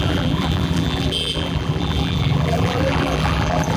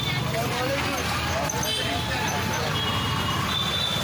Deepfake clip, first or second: first